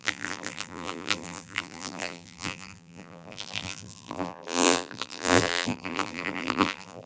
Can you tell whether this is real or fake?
fake